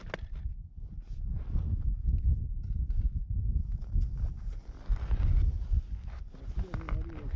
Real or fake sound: real